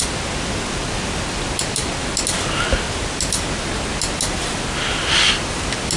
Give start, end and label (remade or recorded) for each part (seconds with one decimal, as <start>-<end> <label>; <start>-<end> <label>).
0.0-6.0 recorded